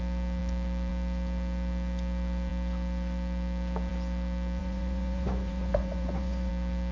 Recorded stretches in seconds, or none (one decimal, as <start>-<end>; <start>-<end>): 0.0-4.6; 6.5-6.9